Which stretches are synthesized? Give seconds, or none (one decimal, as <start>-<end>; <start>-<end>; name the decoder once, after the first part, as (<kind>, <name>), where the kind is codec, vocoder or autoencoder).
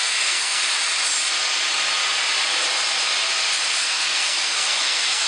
0.0-0.6 (codec, SNAC); 3.8-5.3